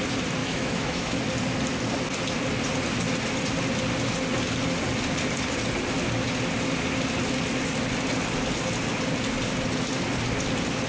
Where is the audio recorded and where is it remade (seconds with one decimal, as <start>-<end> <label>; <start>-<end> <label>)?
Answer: 0.0-0.4 recorded; 0.4-1.2 remade; 1.2-10.9 recorded